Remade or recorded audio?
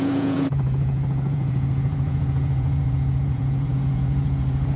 remade